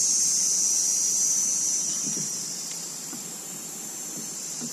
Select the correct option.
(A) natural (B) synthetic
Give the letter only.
B